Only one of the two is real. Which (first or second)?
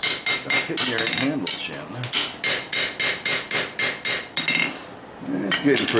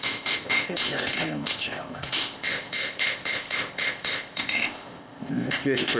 first